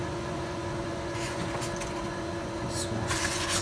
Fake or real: fake